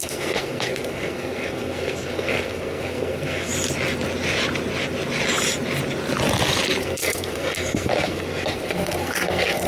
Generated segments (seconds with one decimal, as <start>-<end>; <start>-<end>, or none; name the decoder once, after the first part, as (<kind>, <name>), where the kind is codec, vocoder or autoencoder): 0.0-3.5 (codec, SNAC); 6.8-9.7